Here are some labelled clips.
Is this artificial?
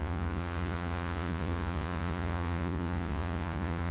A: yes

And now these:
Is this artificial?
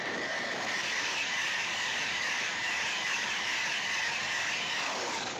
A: yes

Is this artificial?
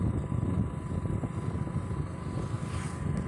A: no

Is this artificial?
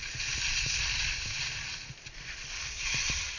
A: no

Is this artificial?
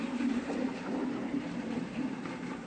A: yes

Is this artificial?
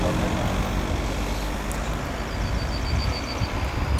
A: no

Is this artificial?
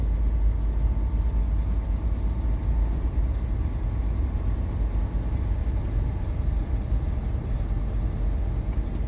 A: no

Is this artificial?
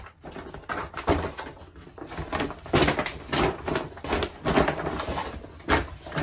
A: no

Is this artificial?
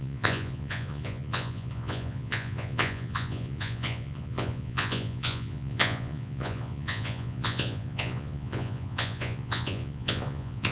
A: yes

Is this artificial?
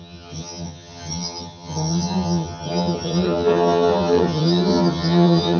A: yes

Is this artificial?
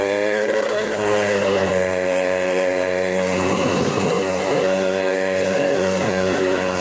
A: yes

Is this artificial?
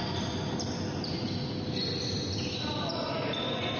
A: no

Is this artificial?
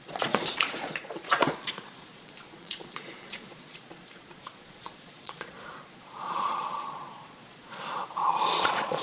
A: yes